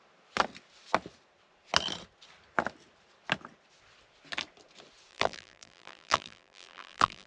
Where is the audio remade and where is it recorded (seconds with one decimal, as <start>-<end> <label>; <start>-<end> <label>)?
0.0-5.1 recorded; 5.1-7.3 remade